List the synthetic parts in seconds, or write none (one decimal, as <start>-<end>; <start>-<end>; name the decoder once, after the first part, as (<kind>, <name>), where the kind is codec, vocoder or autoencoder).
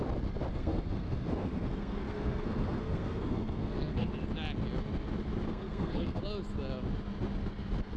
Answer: 0.5-4.1 (codec, SNAC); 5.5-6.2